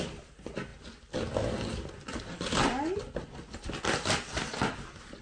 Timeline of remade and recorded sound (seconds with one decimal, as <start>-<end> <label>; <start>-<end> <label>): 0.0-5.2 recorded